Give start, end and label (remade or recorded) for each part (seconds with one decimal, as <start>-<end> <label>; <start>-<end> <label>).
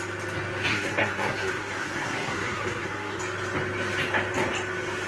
0.0-0.7 recorded; 0.7-3.2 remade; 3.2-5.1 recorded